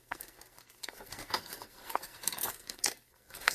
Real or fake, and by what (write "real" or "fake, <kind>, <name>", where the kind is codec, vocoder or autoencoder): fake, codec, SNAC